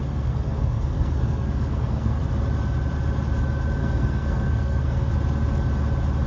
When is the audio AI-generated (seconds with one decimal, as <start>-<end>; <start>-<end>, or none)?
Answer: 0.0-2.2; 3.8-5.1